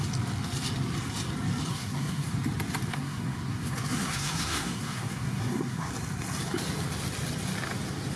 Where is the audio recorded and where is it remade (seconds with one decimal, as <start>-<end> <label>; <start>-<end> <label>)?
0.0-1.7 recorded; 1.7-2.3 remade; 2.3-2.9 recorded; 2.9-5.9 remade; 5.9-8.2 recorded